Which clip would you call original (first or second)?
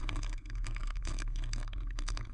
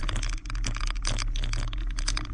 second